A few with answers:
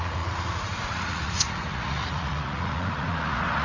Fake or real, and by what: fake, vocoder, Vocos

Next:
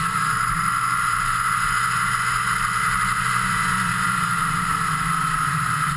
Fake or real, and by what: fake, vocoder, Vocos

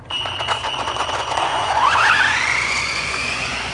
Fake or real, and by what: fake, vocoder, Vocos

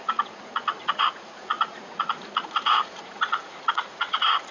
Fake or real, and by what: fake, vocoder, Vocos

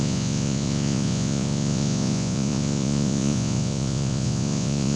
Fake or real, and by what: fake, vocoder, Vocos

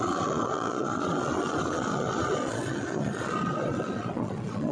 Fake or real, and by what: fake, vocoder, Vocos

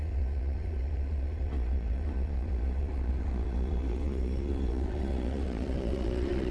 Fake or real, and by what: fake, vocoder, Vocos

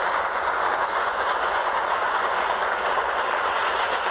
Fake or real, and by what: fake, vocoder, Vocos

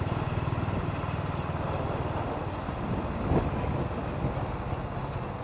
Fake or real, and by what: real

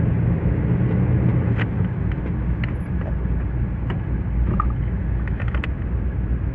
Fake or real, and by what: real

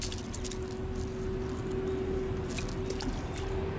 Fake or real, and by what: real